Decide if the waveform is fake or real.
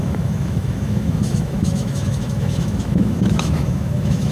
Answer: fake